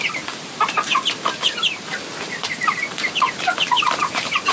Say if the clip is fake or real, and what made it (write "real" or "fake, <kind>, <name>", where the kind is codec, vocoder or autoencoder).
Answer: fake, vocoder, BigVGAN v2